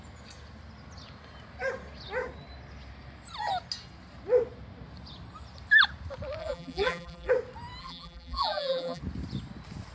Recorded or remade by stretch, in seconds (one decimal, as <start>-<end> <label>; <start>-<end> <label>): 0.0-6.4 recorded; 6.4-7.3 remade; 7.3-7.8 recorded; 7.8-9.0 remade; 9.0-9.9 recorded